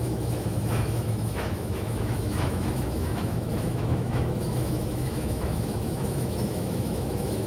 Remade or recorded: remade